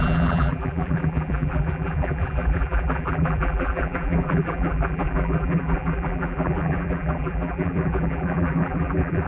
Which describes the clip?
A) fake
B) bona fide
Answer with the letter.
A